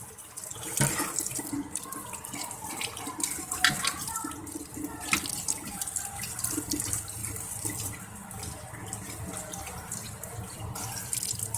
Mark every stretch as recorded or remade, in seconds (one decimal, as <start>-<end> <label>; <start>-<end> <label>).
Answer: 0.0-7.2 recorded; 7.2-10.9 remade; 10.9-11.6 recorded